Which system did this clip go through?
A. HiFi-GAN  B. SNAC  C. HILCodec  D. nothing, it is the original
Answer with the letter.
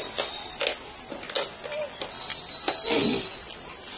D